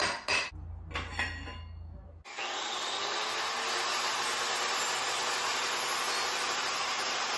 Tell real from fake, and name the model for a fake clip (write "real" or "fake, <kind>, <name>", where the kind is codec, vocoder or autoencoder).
real